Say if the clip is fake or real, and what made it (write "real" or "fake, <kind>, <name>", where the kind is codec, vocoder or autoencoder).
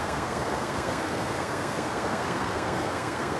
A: fake, codec, SNAC